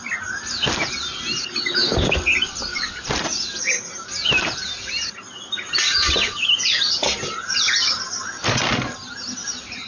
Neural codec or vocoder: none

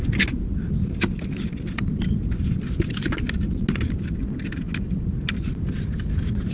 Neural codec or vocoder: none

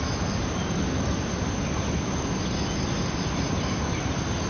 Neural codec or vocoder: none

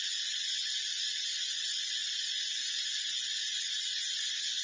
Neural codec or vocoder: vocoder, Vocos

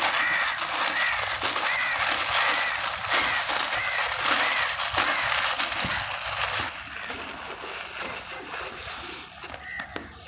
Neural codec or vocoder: none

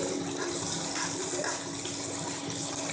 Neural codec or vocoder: none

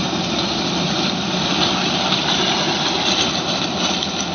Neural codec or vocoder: none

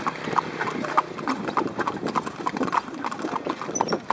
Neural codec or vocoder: none